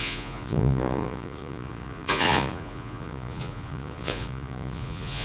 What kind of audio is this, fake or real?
fake